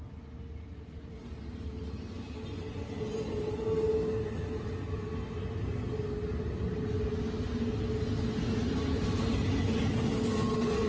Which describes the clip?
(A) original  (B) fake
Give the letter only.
A